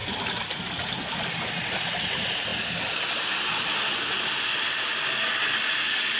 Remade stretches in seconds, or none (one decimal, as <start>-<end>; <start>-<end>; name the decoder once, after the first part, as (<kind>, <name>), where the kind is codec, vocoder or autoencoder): none